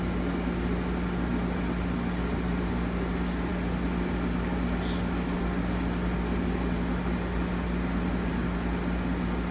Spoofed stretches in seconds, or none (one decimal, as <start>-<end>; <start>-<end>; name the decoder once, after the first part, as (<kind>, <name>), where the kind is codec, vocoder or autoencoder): none